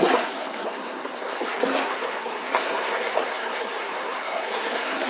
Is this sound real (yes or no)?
no